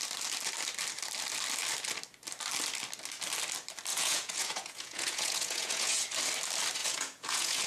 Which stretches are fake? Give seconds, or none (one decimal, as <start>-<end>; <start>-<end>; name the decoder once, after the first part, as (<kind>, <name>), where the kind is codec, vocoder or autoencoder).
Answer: 3.9-6.0 (vocoder, Vocos); 6.8-7.7